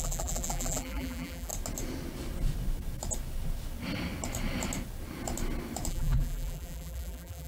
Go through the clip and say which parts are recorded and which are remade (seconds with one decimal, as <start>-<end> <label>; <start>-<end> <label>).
0.0-1.5 remade; 1.5-5.9 recorded; 5.9-7.5 remade